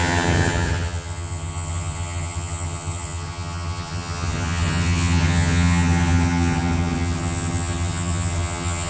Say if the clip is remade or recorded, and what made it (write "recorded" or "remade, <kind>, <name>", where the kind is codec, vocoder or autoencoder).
remade, vocoder, HiFi-GAN